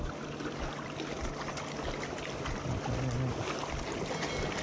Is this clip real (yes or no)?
yes